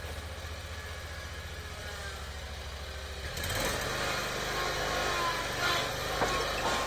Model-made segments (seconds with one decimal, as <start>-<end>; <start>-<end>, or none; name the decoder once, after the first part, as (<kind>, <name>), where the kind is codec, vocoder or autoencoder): none